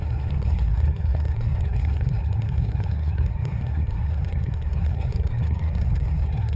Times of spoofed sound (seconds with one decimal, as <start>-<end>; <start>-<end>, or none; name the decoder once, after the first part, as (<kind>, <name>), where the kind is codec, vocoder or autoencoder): 0.0-6.6 (codec, SNAC)